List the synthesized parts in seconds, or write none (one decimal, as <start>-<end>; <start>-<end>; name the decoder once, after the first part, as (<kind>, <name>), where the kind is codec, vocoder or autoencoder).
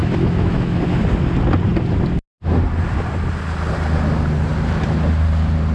0.0-0.8 (autoencoder, DAC-VAE)